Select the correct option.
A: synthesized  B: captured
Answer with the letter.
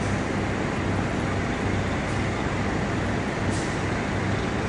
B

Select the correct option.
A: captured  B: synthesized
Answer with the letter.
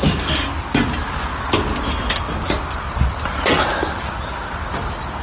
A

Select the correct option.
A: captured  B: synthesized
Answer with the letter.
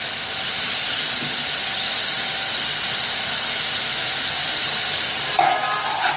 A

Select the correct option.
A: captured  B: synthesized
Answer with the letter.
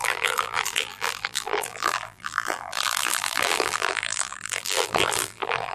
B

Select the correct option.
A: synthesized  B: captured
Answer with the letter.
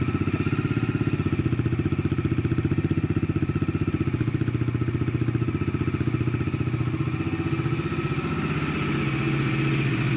B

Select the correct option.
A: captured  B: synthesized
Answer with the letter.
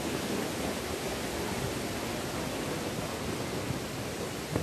A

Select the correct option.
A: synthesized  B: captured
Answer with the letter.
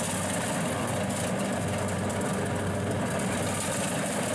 B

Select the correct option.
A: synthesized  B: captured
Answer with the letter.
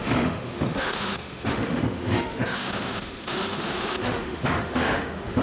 A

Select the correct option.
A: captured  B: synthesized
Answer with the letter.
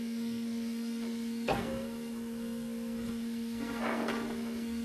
B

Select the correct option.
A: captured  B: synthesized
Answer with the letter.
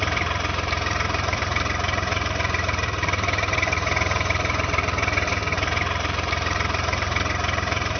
B